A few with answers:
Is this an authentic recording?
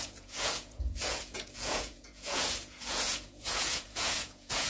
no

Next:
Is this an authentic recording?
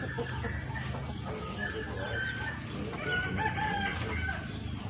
yes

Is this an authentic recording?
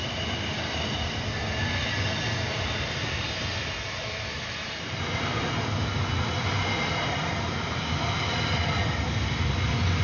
yes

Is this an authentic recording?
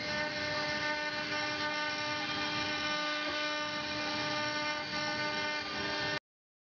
yes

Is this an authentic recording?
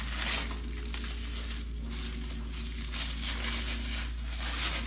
yes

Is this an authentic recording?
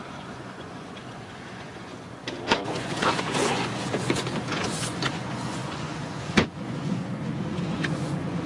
no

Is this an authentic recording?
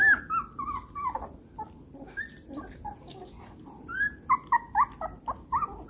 yes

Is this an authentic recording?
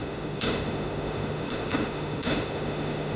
no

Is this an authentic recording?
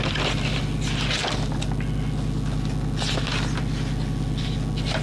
yes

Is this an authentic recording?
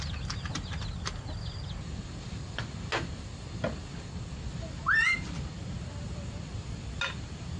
yes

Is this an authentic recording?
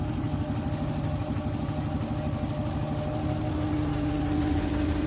yes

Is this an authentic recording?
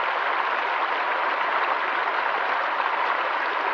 yes